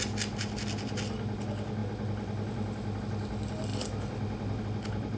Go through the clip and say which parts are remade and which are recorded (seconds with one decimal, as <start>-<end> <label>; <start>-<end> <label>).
0.0-5.2 recorded